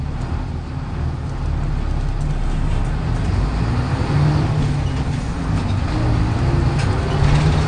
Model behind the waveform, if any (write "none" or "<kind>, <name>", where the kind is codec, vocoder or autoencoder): none